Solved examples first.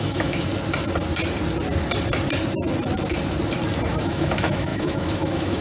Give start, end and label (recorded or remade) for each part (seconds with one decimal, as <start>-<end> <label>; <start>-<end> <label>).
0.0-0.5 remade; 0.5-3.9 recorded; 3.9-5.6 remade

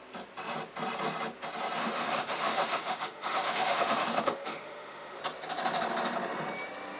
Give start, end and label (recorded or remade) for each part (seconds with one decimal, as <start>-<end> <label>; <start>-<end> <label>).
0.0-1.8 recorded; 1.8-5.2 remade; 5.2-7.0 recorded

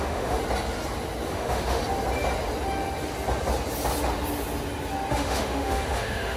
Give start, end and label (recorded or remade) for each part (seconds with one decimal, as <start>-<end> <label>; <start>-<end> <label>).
0.0-0.4 remade; 0.4-1.3 recorded; 1.3-1.8 remade; 1.8-5.1 recorded; 5.1-6.4 remade

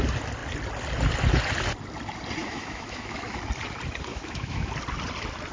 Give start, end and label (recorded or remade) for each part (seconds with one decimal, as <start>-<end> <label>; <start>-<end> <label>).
0.0-2.4 recorded; 2.4-3.4 remade; 3.4-4.1 recorded; 4.1-4.7 remade; 4.7-5.5 recorded